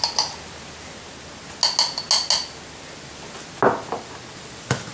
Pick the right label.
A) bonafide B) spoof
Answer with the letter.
A